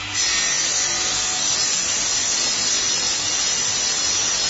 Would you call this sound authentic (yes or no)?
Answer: yes